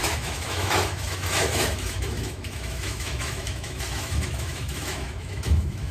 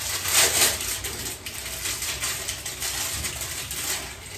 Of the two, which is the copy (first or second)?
first